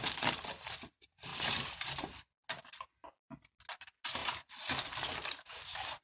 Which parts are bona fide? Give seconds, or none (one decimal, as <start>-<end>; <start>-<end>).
0.0-6.0